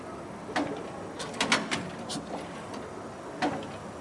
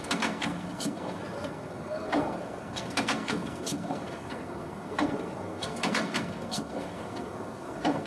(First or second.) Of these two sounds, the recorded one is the first